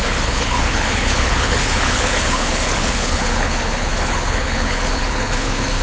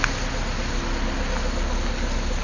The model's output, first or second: first